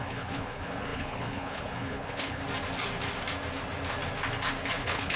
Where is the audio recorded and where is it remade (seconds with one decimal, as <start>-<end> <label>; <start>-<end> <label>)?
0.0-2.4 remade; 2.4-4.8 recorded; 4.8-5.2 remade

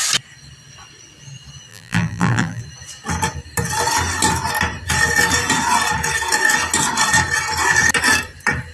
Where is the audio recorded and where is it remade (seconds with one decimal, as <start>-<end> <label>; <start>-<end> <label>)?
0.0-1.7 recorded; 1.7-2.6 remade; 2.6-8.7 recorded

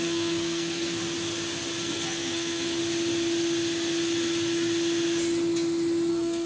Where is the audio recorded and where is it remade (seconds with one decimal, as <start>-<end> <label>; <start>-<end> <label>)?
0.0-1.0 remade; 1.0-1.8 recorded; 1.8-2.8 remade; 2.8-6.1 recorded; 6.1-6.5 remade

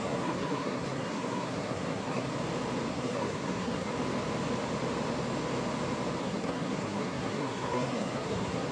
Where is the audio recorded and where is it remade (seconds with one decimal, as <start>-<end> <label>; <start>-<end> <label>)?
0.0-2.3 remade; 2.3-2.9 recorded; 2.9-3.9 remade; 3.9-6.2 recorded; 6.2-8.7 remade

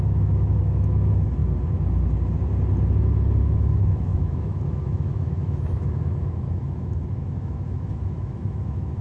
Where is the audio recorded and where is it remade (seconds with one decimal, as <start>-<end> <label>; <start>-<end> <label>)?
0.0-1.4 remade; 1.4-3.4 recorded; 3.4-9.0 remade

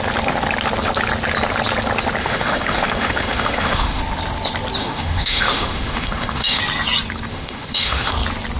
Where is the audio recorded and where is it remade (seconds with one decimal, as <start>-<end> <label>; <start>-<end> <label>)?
0.0-2.2 recorded; 2.2-4.0 remade; 4.0-4.8 recorded; 4.8-6.6 remade; 6.6-7.3 recorded; 7.3-8.1 remade; 8.1-8.6 recorded